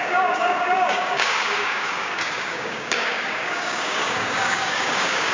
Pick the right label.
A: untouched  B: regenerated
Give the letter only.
B